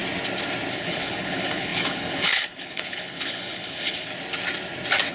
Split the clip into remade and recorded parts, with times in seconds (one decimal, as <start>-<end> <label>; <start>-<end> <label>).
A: 0.0-0.7 recorded; 0.7-4.1 remade; 4.1-5.1 recorded